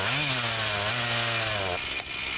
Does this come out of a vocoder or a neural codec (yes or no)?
no